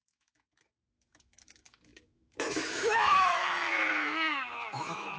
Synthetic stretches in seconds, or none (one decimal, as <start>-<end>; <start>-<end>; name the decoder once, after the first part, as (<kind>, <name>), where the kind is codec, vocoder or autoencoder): 0.0-5.2 (autoencoder, DAC-VAE)